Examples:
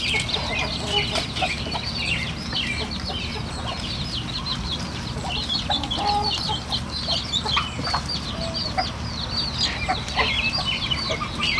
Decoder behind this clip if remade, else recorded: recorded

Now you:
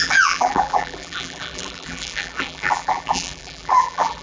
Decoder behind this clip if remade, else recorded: remade, vocoder, BigVGAN v2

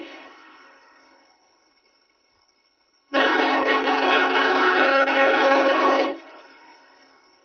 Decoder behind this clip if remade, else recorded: remade, codec, HILCodec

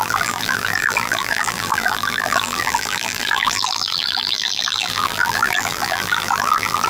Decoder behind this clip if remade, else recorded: remade, vocoder, BigVGAN v2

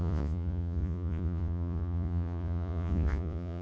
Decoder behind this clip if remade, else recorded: remade, vocoder, Vocos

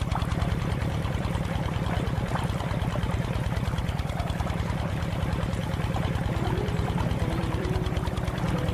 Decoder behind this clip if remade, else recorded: remade, vocoder, BigVGAN v2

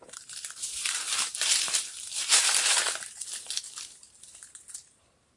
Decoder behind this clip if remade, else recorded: remade, vocoder, BigVGAN v2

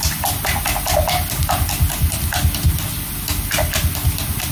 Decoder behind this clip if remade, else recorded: recorded